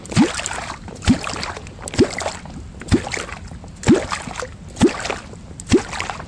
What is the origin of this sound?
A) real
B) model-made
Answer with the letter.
A